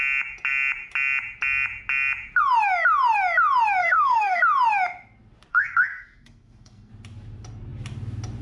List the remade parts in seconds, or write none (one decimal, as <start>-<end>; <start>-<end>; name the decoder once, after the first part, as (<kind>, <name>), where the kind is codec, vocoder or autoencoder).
3.8-4.4 (codec, SNAC); 5.5-6.9